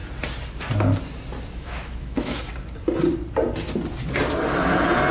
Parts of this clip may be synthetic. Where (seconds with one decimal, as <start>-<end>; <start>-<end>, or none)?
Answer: 1.5-2.5